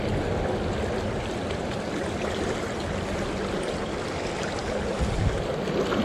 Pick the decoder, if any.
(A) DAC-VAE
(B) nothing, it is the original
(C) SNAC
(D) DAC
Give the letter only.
B